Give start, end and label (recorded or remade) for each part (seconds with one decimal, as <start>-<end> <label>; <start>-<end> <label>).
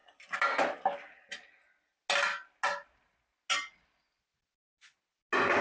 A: 0.0-5.6 recorded